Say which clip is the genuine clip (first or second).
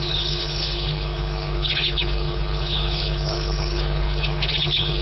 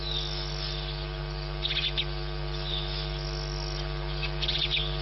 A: second